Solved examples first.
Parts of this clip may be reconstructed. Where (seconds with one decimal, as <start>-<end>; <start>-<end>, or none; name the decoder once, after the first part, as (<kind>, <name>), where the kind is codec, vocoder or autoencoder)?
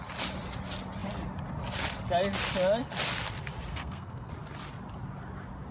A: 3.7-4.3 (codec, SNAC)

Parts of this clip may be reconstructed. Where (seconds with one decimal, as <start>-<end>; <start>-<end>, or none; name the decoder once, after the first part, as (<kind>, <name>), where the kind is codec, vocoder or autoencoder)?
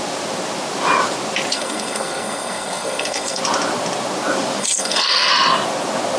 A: 1.5-3.4 (codec, SNAC); 4.6-5.3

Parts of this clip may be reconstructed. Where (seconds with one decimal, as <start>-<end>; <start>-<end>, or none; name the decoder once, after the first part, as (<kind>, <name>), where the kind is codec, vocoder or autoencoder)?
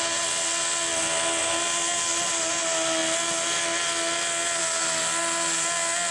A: none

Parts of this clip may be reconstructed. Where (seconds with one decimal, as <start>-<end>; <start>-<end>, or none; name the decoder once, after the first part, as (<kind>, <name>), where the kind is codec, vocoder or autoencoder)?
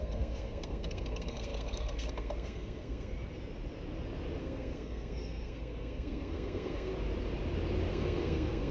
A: 0.0-3.1 (codec, SNAC); 4.4-6.9; 7.9-8.7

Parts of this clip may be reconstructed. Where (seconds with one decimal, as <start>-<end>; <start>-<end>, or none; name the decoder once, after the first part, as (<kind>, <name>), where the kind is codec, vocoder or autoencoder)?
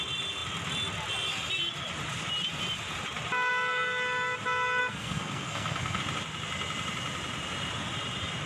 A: 4.8-6.0 (codec, SNAC)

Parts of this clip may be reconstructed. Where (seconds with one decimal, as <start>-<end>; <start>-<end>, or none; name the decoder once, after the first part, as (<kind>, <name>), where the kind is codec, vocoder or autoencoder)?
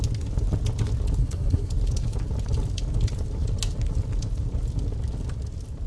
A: 1.2-1.7 (codec, SNAC)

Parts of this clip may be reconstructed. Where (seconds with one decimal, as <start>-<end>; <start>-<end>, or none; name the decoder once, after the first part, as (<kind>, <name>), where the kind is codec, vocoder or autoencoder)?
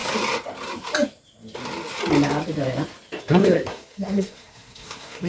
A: 3.2-5.3 (codec, SNAC)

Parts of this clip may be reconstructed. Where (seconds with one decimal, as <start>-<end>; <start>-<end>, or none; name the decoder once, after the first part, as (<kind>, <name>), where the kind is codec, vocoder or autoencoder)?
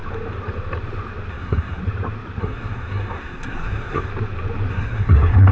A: 1.3-1.8 (codec, SNAC); 2.4-4.1; 4.7-5.5